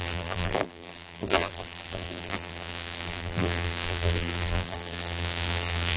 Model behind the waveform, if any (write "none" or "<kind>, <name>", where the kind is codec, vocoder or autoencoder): vocoder, BigVGAN v2